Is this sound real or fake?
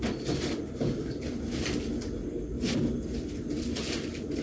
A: real